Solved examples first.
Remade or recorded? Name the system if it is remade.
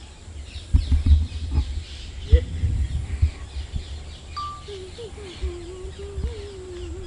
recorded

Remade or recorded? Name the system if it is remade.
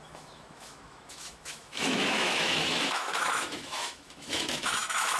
remade, autoencoder, DAC-VAE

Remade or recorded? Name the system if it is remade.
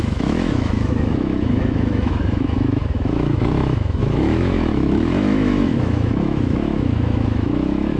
remade, autoencoder, DAC-VAE